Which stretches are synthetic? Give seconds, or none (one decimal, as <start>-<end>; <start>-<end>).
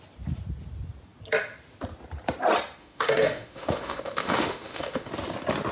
2.8-5.1